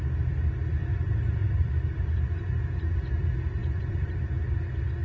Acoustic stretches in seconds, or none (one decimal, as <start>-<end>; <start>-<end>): 0.0-1.4; 2.6-3.6; 4.1-5.0